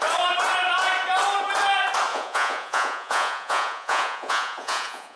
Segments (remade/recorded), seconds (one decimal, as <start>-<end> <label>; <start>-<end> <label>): 0.0-2.1 recorded; 2.1-5.2 remade